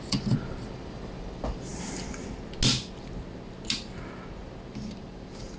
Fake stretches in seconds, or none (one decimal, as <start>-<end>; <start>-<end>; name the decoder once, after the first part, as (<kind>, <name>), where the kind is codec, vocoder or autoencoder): 0.0-1.7 (vocoder, BigVGAN v2); 4.7-5.6